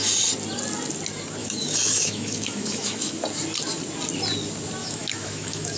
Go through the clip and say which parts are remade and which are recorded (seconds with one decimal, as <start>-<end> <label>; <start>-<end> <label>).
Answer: 0.0-1.4 recorded; 1.4-3.2 remade; 3.2-4.8 recorded; 4.8-5.8 remade